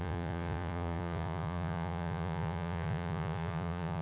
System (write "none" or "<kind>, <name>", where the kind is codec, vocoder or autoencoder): vocoder, Vocos